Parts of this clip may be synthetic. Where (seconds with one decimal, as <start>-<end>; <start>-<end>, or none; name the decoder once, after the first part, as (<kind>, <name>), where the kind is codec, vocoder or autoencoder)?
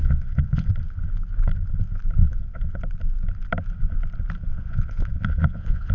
0.0-0.7 (vocoder, Vocos); 2.2-2.8; 4.5-5.9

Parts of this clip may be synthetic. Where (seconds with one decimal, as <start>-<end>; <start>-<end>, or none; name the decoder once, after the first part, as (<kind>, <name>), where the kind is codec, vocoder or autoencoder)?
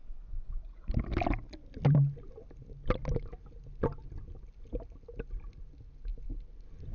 0.0-0.9 (vocoder, Vocos)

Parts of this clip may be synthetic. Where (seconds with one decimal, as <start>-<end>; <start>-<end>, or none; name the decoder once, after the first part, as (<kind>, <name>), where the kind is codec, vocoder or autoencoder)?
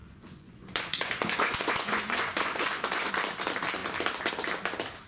0.0-3.1 (vocoder, Vocos)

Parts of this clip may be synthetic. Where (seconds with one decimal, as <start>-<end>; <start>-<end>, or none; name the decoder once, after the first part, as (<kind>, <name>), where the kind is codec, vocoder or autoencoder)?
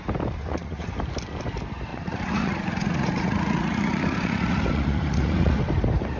0.4-0.9 (vocoder, Vocos); 1.9-5.6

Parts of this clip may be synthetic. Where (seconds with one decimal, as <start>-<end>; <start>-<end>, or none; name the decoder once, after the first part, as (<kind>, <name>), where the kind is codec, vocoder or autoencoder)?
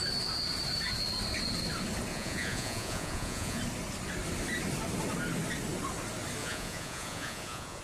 2.1-3.6 (vocoder, Vocos); 6.4-7.8